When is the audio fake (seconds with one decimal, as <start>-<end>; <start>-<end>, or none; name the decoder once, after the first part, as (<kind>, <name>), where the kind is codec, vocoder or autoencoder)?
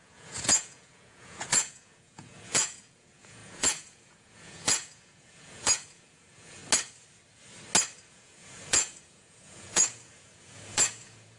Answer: 0.0-6.6 (vocoder, Vocos); 8.1-11.4